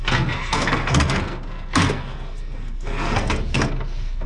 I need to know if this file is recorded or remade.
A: remade